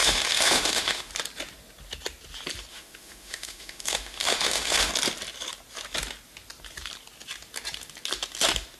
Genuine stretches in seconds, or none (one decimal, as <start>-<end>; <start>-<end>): 1.1-2.7; 4.9-8.8